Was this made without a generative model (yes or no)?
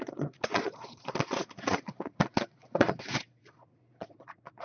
no